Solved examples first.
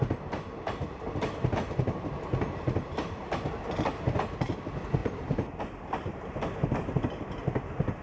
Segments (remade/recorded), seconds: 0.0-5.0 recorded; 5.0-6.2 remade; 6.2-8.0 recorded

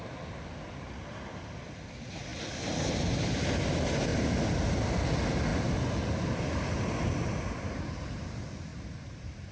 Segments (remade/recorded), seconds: 0.0-5.5 recorded; 5.5-6.2 remade; 6.2-8.7 recorded; 8.7-9.5 remade